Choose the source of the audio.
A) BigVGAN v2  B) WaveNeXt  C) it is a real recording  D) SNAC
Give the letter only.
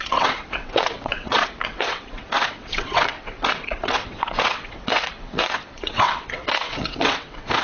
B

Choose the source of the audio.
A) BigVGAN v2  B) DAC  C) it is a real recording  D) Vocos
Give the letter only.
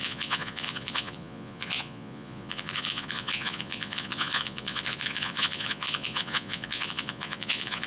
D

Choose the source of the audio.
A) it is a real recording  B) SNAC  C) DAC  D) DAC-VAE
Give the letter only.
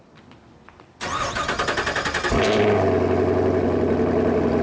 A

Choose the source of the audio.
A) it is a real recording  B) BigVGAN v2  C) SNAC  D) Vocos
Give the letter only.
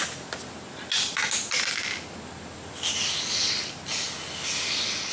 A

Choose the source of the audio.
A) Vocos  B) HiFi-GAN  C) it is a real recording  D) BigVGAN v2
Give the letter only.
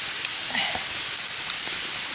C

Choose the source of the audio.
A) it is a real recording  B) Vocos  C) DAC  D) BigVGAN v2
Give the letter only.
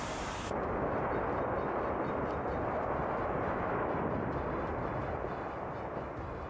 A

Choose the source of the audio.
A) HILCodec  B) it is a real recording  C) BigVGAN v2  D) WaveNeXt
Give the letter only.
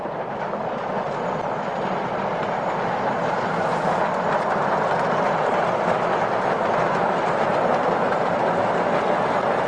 B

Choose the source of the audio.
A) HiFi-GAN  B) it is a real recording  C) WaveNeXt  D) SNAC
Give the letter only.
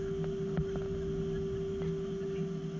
B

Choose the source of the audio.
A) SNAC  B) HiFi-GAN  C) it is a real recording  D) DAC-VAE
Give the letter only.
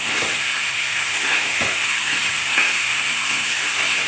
A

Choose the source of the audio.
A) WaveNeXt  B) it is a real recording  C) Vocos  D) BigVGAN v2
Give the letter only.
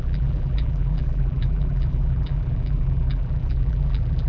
D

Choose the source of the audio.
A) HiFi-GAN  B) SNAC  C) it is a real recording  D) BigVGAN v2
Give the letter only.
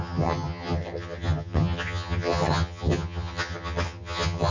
A